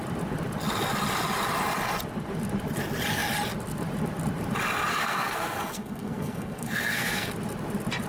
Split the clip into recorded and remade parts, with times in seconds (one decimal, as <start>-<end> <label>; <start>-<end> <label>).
0.0-4.9 recorded; 4.9-7.3 remade; 7.3-8.1 recorded